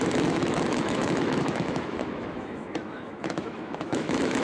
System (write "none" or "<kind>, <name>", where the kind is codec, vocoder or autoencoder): autoencoder, DAC-VAE